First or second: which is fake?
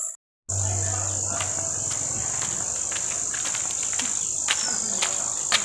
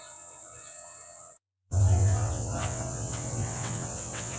second